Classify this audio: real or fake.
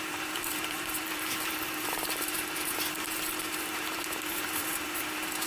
fake